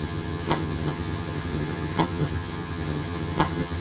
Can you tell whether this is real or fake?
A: fake